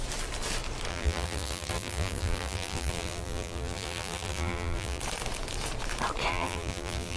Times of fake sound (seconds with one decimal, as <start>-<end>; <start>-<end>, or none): 0.9-5.0; 6.3-7.2